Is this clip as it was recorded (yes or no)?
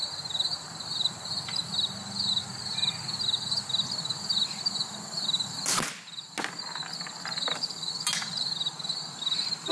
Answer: yes